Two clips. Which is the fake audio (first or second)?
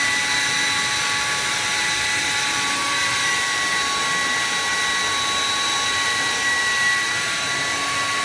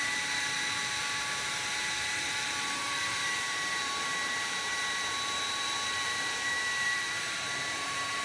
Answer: second